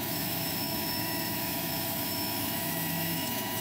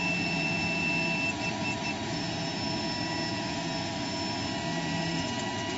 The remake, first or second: first